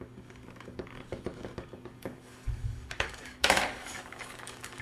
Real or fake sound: fake